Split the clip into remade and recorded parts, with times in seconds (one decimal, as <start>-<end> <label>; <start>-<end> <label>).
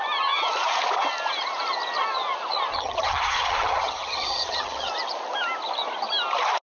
0.0-2.7 recorded; 2.7-4.9 remade; 4.9-6.6 recorded